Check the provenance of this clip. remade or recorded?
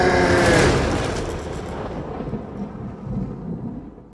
recorded